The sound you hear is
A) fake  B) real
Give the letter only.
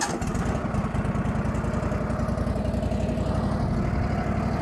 B